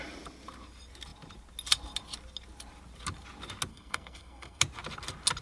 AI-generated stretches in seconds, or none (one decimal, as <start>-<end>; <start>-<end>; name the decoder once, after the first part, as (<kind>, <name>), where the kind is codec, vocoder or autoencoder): 3.7-4.6 (codec, SNAC)